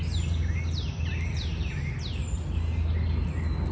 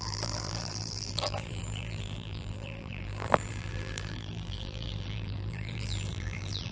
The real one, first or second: first